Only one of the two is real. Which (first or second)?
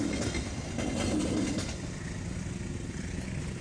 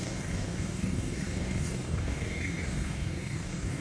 first